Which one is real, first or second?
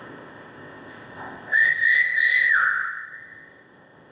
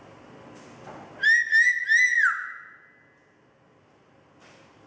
second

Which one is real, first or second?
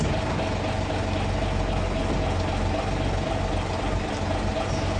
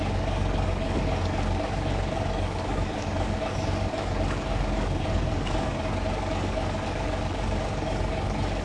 first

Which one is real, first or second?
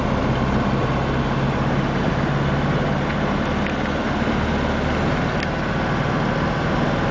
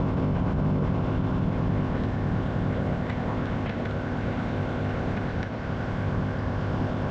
first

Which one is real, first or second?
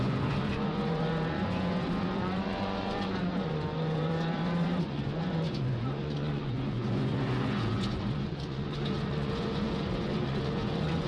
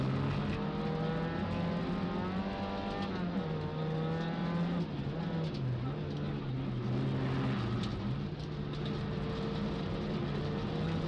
second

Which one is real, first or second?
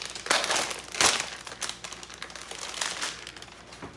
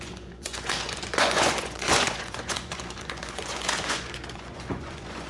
first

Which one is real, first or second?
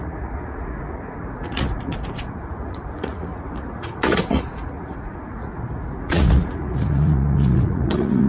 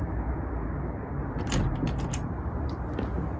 second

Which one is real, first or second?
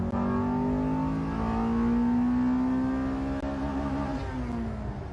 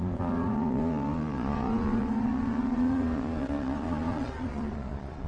first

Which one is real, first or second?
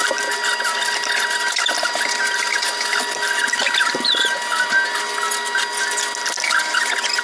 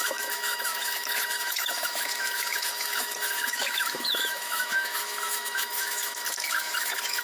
first